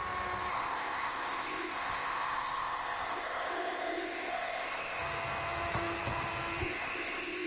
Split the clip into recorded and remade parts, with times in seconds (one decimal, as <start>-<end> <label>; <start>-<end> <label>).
0.0-0.5 recorded; 0.5-5.0 remade; 5.0-6.6 recorded; 6.6-7.5 remade